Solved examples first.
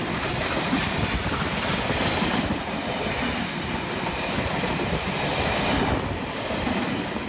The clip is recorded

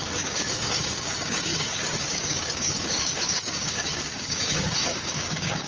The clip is remade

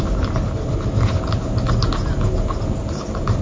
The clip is recorded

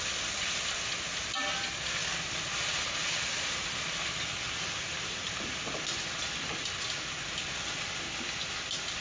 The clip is recorded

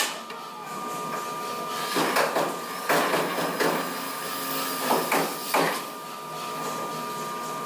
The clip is recorded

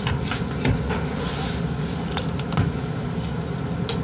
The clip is recorded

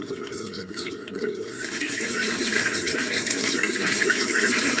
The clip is remade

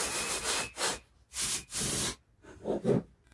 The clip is recorded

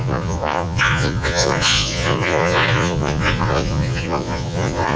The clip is remade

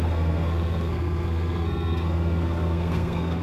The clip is remade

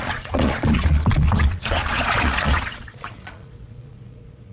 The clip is remade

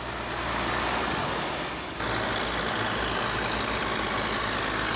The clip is recorded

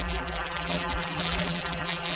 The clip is remade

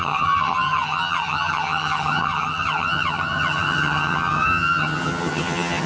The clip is remade